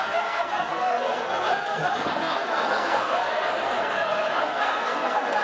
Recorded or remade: remade